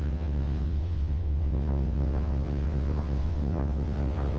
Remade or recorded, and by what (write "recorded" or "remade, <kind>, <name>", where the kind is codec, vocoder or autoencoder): remade, vocoder, WaveNeXt